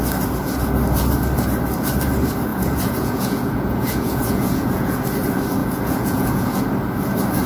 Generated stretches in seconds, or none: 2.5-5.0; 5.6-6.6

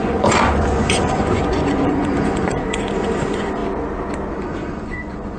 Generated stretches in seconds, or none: 0.0-3.6; 4.4-5.4

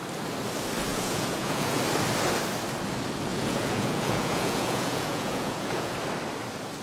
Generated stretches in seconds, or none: 0.9-1.8; 3.3-5.9

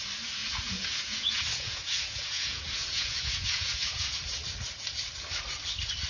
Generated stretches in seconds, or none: 0.4-4.1